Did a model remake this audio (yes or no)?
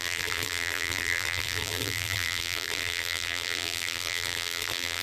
yes